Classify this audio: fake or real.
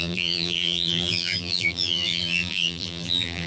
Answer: fake